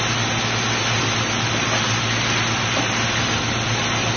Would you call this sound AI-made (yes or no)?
no